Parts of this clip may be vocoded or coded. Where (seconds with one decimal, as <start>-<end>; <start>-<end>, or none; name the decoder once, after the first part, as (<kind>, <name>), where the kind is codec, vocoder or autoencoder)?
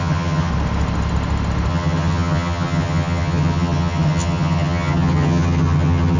0.0-0.5 (vocoder, HiFi-GAN); 1.7-6.2